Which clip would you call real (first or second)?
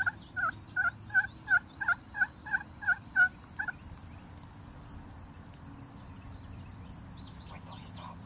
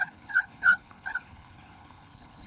first